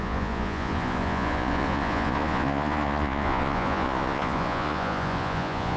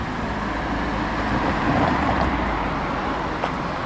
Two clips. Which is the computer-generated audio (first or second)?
first